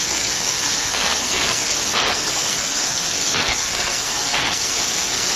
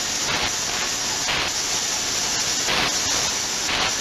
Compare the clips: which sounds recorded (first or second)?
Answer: second